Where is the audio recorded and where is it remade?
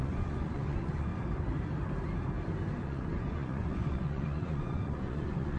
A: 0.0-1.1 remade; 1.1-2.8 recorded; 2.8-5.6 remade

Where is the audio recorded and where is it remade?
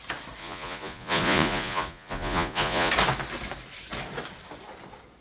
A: 0.0-0.4 recorded; 0.4-2.9 remade; 2.9-5.2 recorded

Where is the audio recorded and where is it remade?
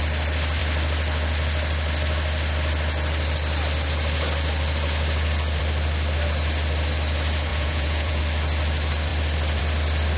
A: 0.0-7.5 recorded; 7.5-8.2 remade; 8.2-10.2 recorded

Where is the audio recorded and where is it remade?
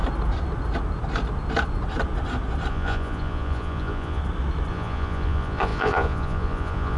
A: 0.0-2.7 recorded; 2.7-4.2 remade; 4.2-4.7 recorded; 4.7-7.0 remade